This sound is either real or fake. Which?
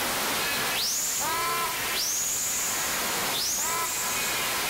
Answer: real